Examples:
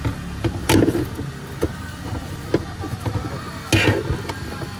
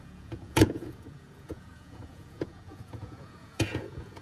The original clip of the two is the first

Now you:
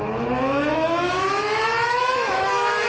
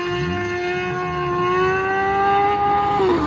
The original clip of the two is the second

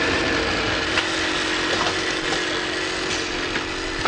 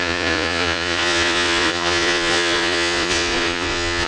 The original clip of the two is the first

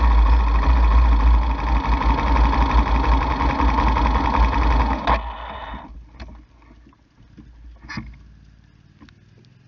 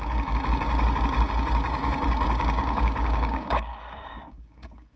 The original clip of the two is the first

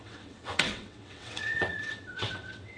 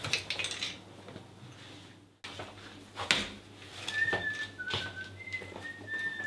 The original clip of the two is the second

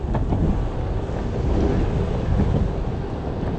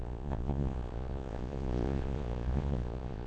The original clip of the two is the first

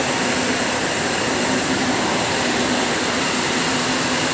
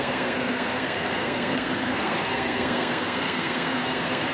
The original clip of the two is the first